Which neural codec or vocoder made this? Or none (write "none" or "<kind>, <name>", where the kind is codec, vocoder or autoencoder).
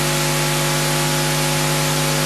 none